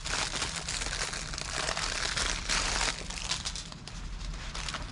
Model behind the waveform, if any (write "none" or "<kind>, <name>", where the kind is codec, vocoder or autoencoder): vocoder, BigVGAN v2